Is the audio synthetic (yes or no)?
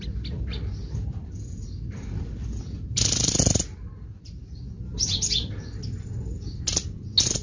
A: no